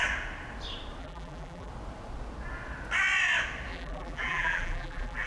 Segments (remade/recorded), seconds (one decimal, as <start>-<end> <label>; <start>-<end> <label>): 0.0-1.0 recorded; 1.0-1.7 remade; 1.7-3.7 recorded; 3.7-5.3 remade